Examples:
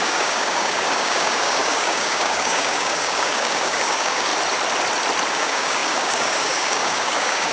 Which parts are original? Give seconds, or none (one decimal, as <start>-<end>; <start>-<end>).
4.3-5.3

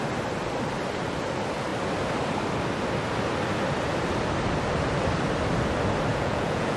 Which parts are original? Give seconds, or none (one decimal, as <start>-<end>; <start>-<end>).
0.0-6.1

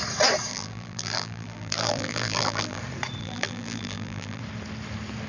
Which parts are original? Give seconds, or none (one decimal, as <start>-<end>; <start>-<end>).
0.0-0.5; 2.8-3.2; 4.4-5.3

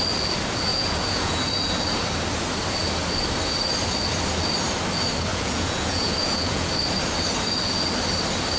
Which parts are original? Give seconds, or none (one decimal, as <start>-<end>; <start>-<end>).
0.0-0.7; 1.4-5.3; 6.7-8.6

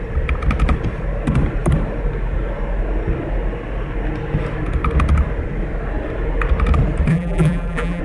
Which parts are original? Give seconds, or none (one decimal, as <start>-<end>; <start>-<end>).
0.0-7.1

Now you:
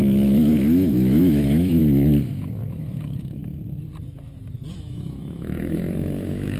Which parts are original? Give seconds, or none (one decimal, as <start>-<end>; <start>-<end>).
1.8-2.7; 3.4-4.7